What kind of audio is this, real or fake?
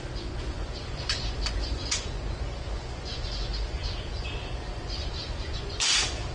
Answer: fake